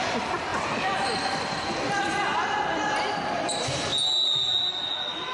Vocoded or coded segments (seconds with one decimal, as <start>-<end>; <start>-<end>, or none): 0.5-3.1

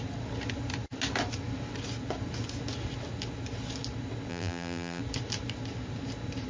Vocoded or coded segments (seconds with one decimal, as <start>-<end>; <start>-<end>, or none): 4.3-5.0

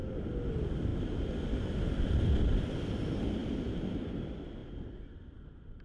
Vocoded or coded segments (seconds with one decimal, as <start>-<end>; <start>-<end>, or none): 0.5-5.8

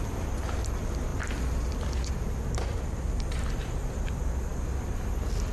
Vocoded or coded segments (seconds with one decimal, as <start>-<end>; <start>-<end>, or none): none